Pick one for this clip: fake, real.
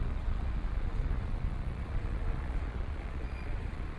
fake